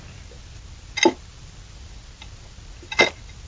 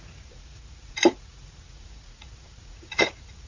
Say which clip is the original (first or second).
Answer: first